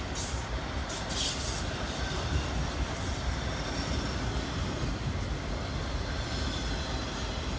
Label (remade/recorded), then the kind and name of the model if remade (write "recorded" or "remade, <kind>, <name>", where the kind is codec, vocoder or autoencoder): recorded